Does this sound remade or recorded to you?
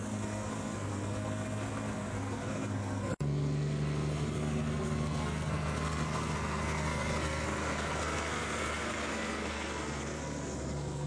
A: remade